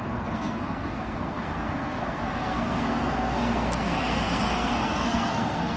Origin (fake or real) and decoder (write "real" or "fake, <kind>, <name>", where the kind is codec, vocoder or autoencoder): fake, codec, SNAC